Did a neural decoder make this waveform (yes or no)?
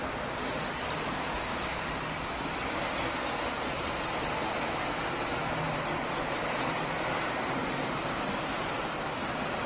no